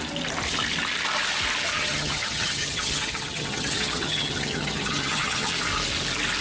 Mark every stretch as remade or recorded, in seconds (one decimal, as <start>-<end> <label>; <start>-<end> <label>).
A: 0.0-1.7 recorded; 1.7-5.5 remade; 5.5-6.4 recorded